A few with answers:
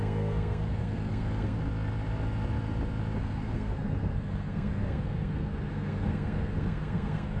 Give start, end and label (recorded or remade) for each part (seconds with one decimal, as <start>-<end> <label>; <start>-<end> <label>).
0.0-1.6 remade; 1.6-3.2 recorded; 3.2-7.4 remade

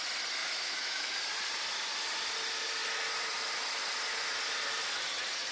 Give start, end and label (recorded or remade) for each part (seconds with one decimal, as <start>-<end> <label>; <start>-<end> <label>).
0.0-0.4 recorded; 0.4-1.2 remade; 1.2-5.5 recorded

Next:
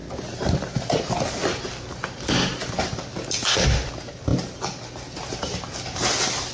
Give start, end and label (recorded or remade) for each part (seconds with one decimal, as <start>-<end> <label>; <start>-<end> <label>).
0.0-6.5 recorded

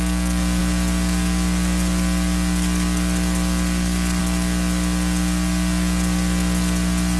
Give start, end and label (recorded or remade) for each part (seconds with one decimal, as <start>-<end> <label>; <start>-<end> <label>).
0.0-7.2 recorded

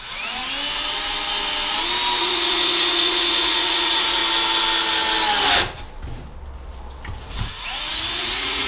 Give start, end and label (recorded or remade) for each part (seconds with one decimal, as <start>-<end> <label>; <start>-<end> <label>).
0.0-0.4 remade; 0.4-2.2 recorded; 2.2-4.2 remade; 4.2-7.3 recorded; 7.3-8.7 remade

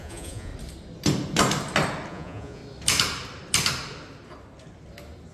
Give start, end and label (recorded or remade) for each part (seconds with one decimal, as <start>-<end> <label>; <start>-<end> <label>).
0.0-0.5 remade; 0.5-2.1 recorded; 2.1-2.6 remade; 2.6-5.3 recorded

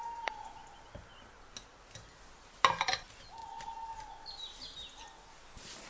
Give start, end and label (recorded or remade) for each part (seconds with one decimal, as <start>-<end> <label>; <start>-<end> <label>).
0.0-5.9 recorded